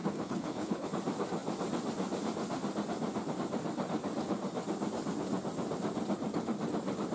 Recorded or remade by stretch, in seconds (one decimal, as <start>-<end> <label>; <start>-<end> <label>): 0.0-0.9 remade; 0.9-7.1 recorded